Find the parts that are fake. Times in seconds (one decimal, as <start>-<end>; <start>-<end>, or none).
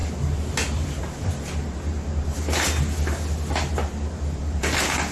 none